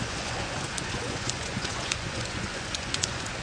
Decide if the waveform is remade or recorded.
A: remade